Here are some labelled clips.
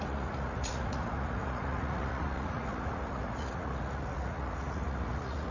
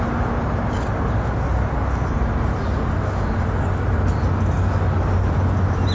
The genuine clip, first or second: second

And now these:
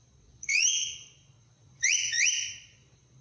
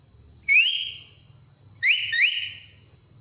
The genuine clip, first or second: second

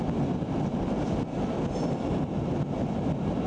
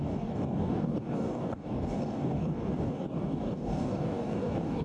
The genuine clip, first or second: first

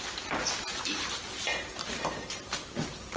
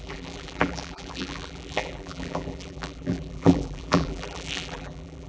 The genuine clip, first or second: first